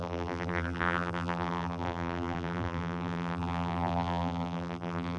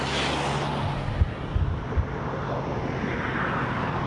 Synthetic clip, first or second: first